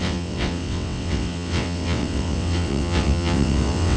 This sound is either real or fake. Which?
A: fake